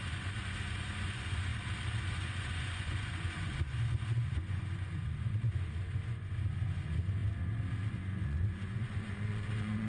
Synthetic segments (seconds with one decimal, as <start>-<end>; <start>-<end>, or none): 0.0-1.5; 2.0-7.2; 7.9-9.9